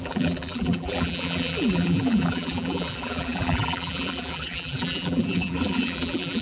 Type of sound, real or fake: fake